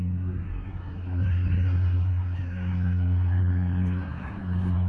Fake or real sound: fake